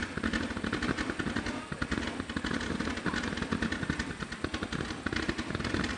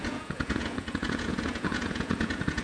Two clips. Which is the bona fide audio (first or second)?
first